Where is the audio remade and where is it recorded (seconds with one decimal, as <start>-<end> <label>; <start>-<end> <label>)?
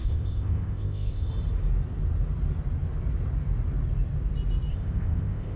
0.0-1.3 remade; 1.3-4.7 recorded; 4.7-5.6 remade